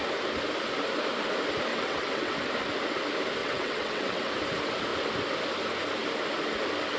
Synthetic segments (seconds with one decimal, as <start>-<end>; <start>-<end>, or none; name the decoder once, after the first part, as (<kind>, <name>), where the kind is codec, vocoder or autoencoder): 1.7-2.3 (vocoder, WaveNeXt); 3.4-4.3